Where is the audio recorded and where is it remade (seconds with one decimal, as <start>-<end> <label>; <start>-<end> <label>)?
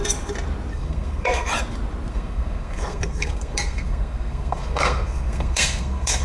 0.0-0.7 recorded; 0.7-1.5 remade; 1.5-2.1 recorded; 2.1-6.2 remade